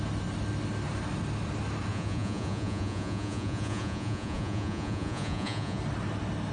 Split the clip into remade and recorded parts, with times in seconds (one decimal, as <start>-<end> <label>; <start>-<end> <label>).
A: 0.0-1.9 recorded; 1.9-5.8 remade; 5.8-6.5 recorded